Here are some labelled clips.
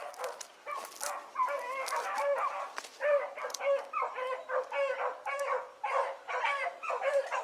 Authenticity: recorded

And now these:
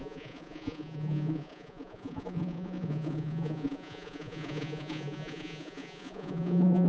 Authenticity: remade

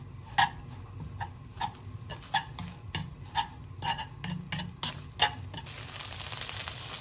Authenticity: recorded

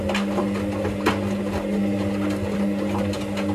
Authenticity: recorded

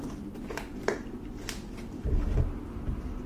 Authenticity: recorded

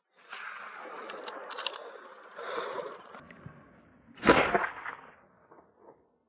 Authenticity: recorded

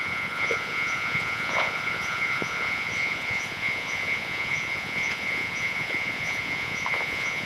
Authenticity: remade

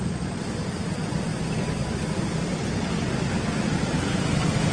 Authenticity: recorded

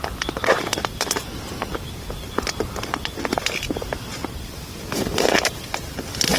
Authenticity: recorded